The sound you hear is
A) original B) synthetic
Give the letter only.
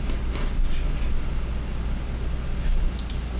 A